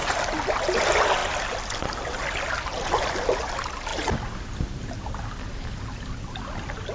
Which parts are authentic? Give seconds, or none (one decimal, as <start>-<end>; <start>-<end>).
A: 0.0-6.9